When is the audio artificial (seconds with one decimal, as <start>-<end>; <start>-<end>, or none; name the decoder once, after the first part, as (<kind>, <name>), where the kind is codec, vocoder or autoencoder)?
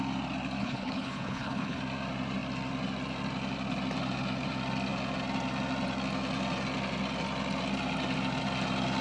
0.6-1.8 (codec, HILCodec)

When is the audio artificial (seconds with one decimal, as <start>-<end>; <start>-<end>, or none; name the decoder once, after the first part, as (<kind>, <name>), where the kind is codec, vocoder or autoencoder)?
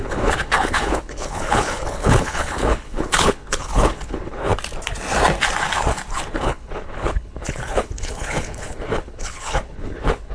0.0-4.5 (codec, HILCodec); 6.4-10.3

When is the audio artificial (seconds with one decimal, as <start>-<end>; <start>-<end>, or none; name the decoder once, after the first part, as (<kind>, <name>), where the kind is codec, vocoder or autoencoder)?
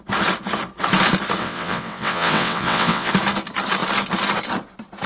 1.4-3.1 (vocoder, WaveNeXt)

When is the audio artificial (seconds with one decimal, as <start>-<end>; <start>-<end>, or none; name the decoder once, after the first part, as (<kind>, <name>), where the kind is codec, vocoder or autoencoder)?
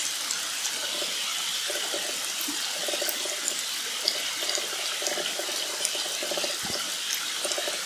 none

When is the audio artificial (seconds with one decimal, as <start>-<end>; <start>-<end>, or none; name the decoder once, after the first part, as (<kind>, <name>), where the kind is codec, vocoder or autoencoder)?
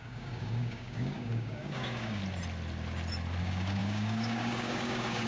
0.0-2.2 (codec, DAC); 3.4-5.3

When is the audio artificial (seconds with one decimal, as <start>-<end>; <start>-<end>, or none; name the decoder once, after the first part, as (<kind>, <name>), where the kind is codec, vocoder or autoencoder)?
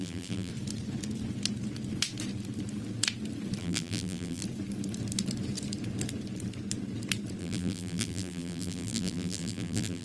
0.0-0.5 (vocoder, BigVGAN v2); 3.6-4.4; 7.4-10.0